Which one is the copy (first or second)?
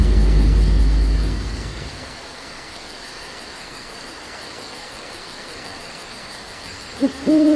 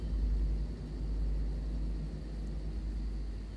first